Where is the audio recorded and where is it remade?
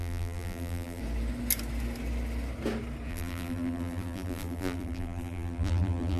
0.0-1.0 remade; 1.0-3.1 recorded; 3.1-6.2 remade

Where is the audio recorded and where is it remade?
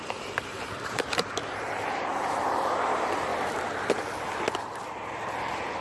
0.0-3.3 remade; 3.3-5.3 recorded; 5.3-5.8 remade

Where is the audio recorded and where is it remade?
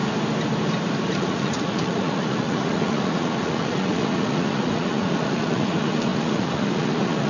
0.0-1.1 recorded; 1.1-7.3 remade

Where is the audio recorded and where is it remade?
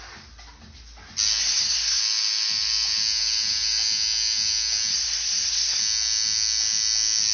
0.0-1.4 recorded; 1.4-2.0 remade; 2.0-4.9 recorded; 4.9-5.8 remade; 5.8-7.3 recorded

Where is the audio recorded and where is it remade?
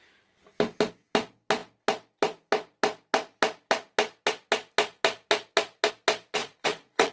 0.0-6.4 recorded; 6.4-7.1 remade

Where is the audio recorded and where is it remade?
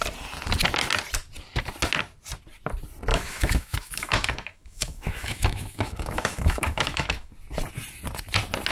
0.0-3.1 recorded; 3.1-7.3 remade; 7.3-8.7 recorded